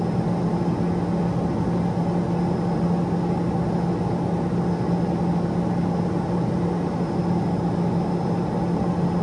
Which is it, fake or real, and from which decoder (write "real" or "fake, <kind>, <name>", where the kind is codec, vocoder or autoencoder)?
real